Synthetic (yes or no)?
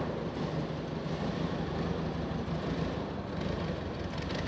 no